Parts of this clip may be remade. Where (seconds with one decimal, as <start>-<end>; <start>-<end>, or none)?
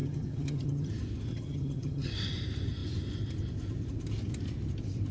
0.0-0.9; 1.3-2.1